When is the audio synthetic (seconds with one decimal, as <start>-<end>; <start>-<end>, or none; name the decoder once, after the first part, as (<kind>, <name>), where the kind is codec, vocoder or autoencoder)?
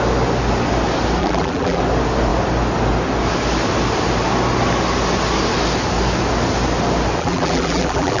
1.2-1.8 (vocoder, BigVGAN v2); 7.2-8.2